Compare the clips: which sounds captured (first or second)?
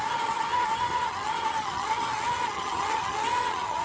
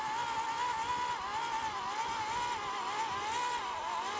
second